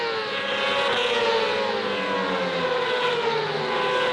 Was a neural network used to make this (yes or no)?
no